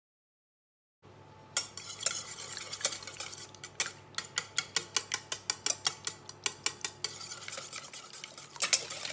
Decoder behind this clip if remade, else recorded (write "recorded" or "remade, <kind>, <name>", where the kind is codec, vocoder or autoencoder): recorded